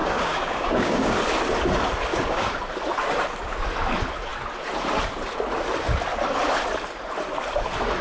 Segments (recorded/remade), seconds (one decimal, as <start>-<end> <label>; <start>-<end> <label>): 0.0-1.2 remade; 1.2-2.1 recorded; 2.1-2.6 remade; 2.6-8.0 recorded

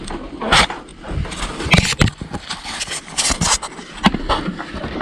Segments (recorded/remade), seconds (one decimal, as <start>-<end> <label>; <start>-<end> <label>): 0.0-5.0 recorded

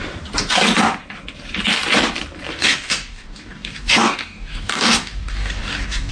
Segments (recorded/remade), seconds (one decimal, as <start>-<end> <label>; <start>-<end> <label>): 0.0-2.5 recorded; 2.5-6.1 remade

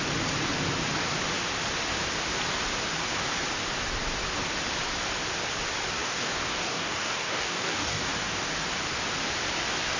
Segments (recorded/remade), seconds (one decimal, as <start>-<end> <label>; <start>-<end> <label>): 0.0-6.0 recorded; 6.0-8.0 remade; 8.0-10.0 recorded

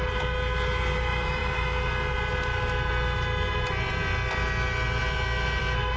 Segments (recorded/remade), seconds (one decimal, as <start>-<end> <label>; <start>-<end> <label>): 0.0-6.0 recorded